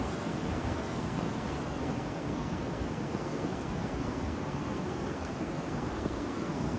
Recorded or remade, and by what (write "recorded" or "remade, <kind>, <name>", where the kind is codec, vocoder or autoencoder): remade, codec, SNAC